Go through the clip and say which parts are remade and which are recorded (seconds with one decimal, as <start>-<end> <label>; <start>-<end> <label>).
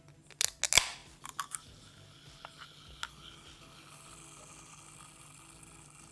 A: 0.0-6.1 recorded